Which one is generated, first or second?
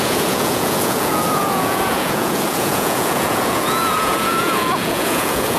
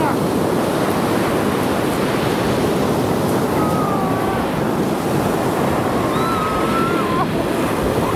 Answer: first